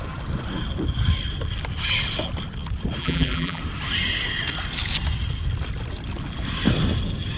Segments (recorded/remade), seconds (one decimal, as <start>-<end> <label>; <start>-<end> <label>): 0.0-3.0 recorded; 3.0-3.6 remade; 3.6-7.4 recorded